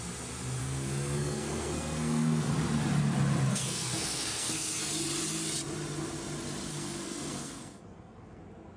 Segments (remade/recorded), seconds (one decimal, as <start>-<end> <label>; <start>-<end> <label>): 0.0-0.6 recorded; 0.6-2.5 remade; 2.5-3.5 recorded; 3.5-4.9 remade; 4.9-6.7 recorded; 6.7-8.4 remade; 8.4-8.8 recorded